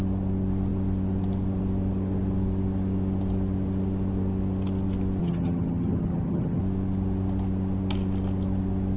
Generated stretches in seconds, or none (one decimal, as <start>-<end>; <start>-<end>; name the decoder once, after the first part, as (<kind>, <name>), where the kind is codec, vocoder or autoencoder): 5.2-6.6 (vocoder, HiFi-GAN)